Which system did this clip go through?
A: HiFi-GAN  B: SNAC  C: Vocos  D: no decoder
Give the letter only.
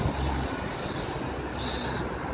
D